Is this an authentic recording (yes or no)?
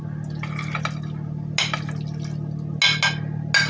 yes